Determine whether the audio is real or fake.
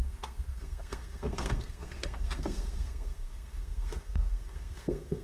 fake